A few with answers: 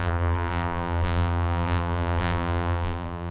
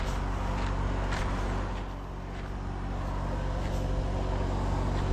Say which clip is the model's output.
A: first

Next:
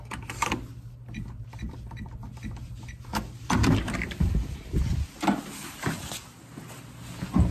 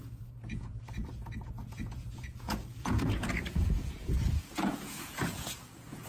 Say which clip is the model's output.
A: second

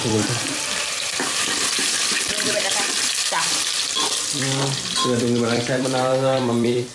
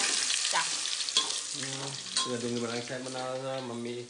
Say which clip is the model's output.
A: first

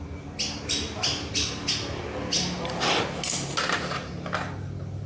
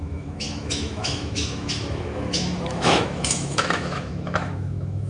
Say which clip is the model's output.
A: second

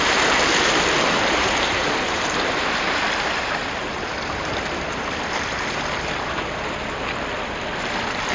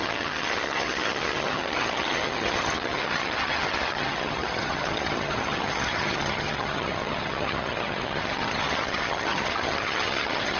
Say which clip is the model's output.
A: second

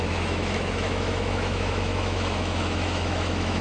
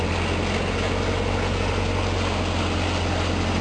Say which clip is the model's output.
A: first